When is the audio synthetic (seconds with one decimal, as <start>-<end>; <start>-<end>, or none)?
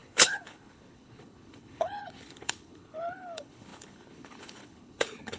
0.0-5.4